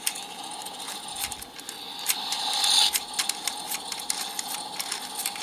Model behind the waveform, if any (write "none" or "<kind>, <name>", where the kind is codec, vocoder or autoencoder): none